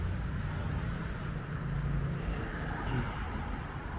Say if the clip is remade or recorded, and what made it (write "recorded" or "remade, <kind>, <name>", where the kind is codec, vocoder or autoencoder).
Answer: recorded